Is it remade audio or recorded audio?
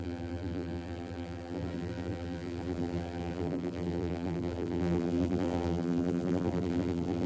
remade